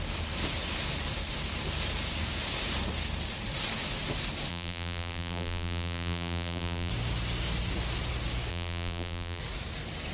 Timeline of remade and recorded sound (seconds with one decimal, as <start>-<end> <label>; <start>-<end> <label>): 0.0-4.5 recorded; 4.5-6.9 remade; 6.9-8.5 recorded; 8.5-9.4 remade; 9.4-10.1 recorded